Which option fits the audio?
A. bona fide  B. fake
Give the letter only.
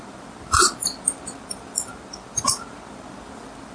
B